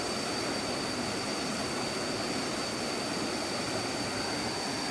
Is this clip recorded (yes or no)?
yes